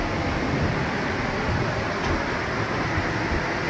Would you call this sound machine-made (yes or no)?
no